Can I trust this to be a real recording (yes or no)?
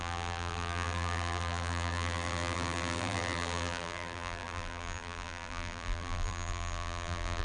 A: no